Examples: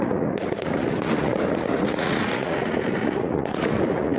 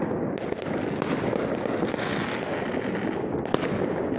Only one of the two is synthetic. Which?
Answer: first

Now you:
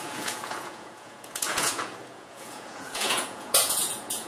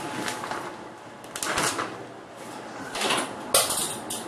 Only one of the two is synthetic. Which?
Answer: first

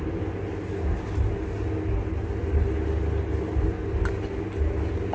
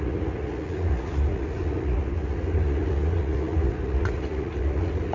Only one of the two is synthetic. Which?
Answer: second